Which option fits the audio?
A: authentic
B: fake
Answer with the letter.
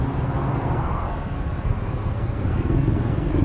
B